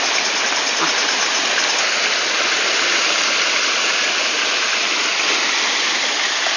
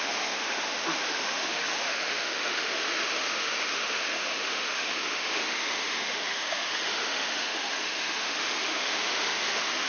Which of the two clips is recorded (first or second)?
first